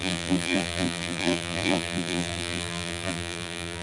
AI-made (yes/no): yes